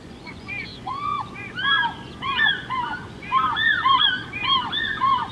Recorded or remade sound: remade